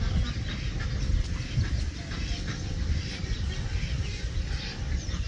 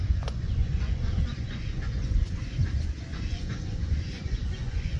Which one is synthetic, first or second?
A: second